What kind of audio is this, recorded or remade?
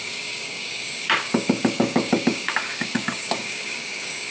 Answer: remade